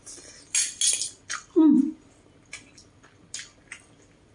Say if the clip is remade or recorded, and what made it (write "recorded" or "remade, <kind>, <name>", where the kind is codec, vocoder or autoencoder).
recorded